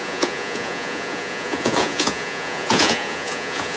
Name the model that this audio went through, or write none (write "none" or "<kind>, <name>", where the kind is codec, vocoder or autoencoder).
vocoder, Vocos